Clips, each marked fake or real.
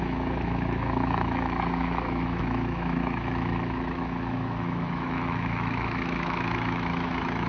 fake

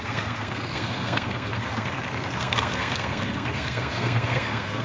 fake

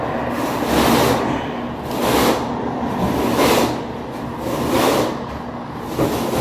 real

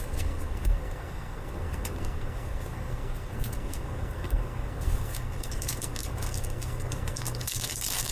fake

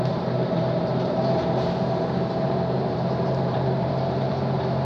fake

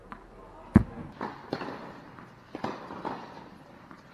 real